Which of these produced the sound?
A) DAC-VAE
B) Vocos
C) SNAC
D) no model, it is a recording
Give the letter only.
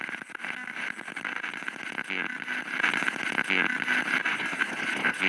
D